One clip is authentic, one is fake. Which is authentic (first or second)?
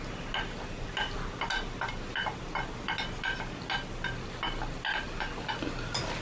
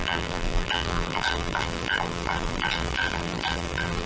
first